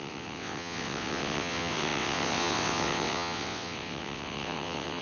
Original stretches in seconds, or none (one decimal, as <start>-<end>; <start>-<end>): none